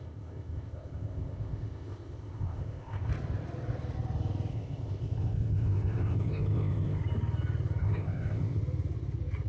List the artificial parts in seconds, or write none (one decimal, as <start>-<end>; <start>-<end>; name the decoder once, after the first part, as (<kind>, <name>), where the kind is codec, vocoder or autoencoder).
0.0-3.1 (codec, ZipCodec); 4.5-7.0; 7.8-8.6